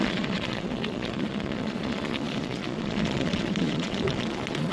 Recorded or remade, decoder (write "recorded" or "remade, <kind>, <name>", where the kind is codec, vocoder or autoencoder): remade, vocoder, Vocos